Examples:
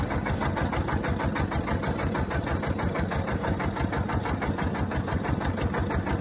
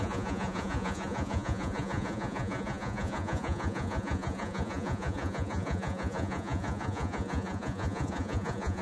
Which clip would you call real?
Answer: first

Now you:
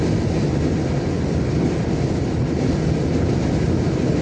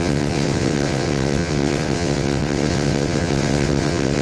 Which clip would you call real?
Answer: first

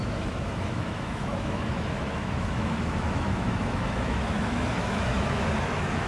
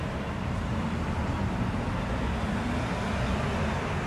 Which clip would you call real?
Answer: second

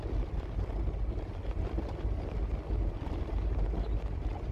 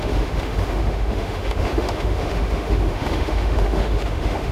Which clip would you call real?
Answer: first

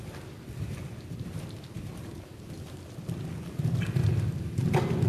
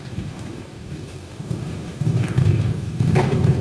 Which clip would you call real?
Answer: first